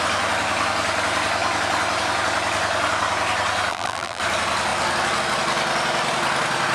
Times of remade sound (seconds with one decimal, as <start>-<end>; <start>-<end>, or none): 3.7-4.2

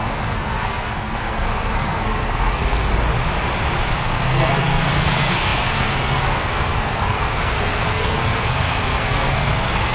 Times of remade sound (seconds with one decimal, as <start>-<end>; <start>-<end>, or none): 0.0-2.9; 3.9-9.9

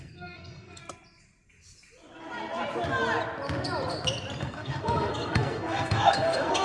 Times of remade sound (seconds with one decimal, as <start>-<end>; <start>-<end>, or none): 0.0-0.8; 4.4-6.6

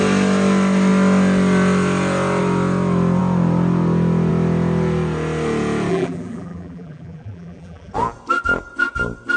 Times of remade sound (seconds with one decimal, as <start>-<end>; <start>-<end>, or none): 5.9-7.9